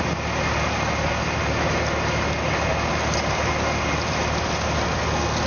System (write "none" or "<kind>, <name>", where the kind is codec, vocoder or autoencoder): none